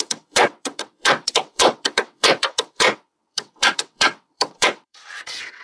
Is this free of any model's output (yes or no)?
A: no